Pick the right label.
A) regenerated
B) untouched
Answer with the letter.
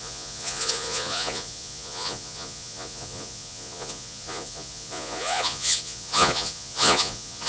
A